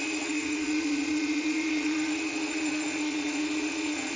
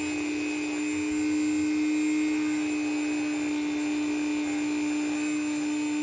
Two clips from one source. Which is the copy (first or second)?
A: first